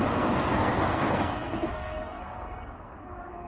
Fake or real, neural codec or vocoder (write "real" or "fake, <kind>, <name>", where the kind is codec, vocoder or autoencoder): fake, codec, SNAC